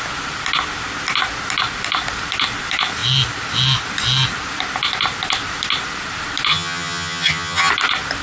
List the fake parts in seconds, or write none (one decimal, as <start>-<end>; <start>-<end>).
6.5-7.7